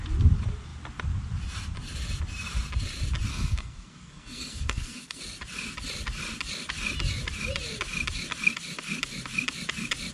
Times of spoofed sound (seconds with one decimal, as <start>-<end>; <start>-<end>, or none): 3.3-5.2